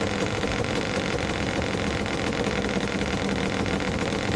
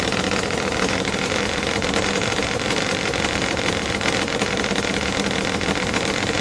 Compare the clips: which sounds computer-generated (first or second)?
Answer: second